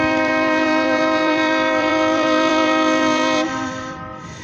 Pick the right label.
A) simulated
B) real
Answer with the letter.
A